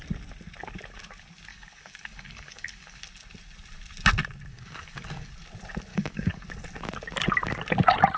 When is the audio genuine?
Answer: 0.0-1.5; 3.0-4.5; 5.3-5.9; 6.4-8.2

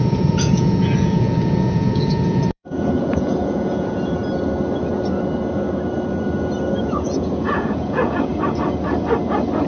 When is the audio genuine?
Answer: 4.2-6.8; 8.3-9.7

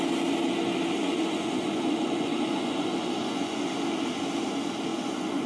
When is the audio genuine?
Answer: 0.0-1.0; 3.7-4.9

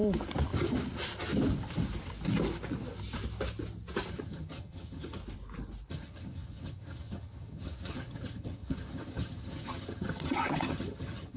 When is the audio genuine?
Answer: 0.0-4.1; 5.2-5.9

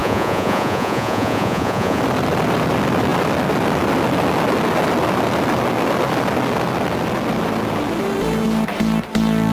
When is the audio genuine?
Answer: 2.0-9.5

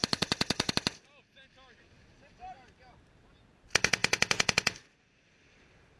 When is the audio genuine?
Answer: 0.7-4.0; 5.3-6.0